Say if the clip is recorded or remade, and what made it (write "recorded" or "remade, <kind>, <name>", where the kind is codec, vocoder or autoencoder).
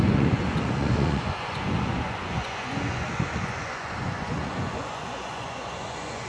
remade, vocoder, Vocos